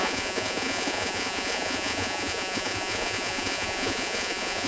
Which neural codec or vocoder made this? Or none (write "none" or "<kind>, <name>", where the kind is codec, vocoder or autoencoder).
vocoder, Vocos